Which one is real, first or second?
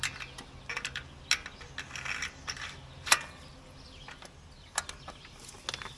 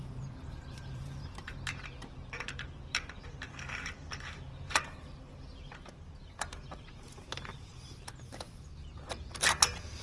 first